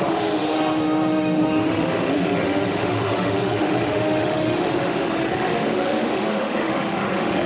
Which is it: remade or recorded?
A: remade